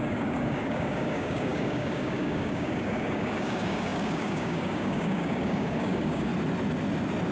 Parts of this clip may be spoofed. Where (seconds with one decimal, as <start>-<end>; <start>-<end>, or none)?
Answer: 0.0-6.3